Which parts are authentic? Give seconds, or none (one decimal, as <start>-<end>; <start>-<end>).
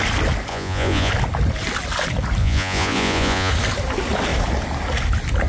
0.0-0.5; 1.1-2.4; 3.5-5.5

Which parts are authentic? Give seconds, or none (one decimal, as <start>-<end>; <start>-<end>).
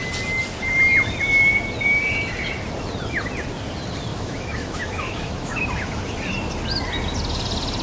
0.0-4.1; 6.0-7.8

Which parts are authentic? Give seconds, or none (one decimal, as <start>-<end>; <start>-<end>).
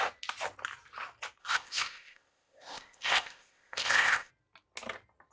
0.0-1.4; 4.3-5.3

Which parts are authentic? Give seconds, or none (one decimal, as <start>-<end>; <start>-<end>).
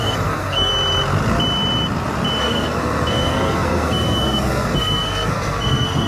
0.7-2.4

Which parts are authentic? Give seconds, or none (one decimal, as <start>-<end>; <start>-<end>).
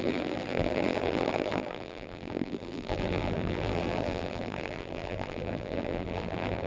none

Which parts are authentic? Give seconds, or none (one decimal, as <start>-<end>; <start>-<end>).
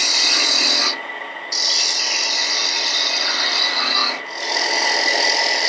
0.0-5.7